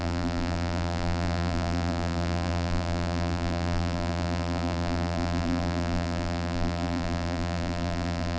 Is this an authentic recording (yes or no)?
no